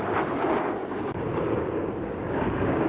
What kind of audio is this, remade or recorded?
remade